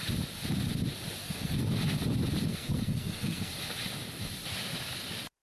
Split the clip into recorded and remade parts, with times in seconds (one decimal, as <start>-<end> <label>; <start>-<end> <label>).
0.0-1.2 recorded; 1.2-1.7 remade; 1.7-2.5 recorded; 2.5-3.5 remade; 3.5-5.4 recorded